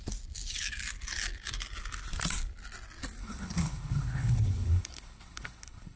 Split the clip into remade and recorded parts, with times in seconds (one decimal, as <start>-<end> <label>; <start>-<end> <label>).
0.0-3.2 recorded; 3.2-6.0 remade